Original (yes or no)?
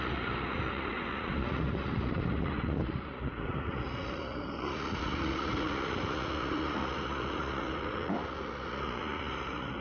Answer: no